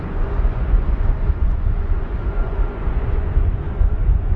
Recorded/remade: remade